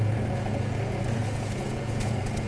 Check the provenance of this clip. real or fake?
fake